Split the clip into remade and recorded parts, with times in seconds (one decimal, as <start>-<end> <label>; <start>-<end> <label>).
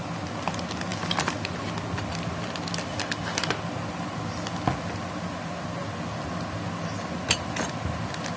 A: 0.0-8.4 recorded